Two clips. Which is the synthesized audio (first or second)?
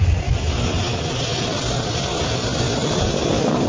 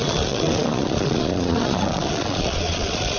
second